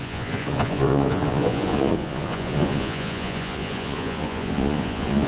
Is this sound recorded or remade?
remade